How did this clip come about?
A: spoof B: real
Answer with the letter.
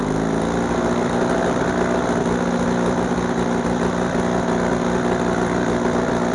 B